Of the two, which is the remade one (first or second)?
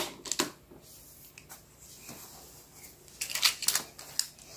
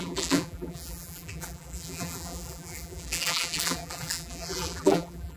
second